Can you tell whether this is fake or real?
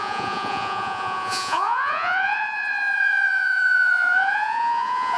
fake